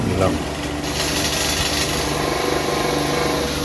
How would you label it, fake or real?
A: real